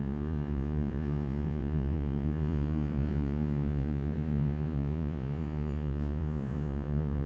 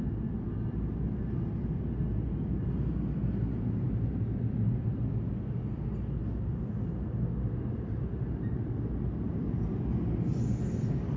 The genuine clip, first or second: second